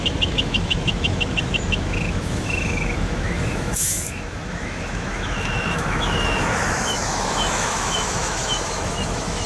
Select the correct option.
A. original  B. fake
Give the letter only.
B